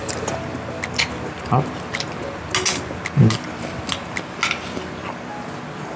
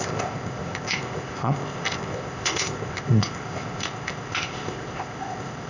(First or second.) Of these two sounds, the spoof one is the second